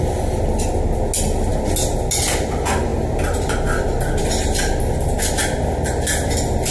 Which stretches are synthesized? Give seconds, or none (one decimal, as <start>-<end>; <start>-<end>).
none